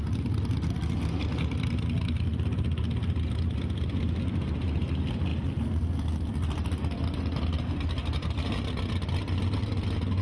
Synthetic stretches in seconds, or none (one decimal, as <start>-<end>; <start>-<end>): none